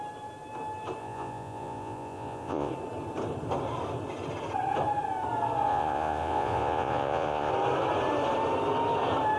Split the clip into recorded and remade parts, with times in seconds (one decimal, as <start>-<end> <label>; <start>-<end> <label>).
0.0-1.0 recorded; 1.0-2.7 remade; 2.7-5.7 recorded; 5.7-7.5 remade; 7.5-9.4 recorded